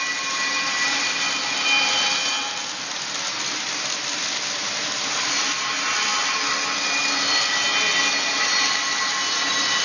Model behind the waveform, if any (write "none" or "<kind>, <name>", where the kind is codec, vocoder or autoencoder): none